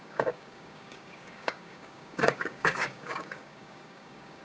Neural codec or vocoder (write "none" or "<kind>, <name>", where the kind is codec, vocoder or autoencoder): codec, DAC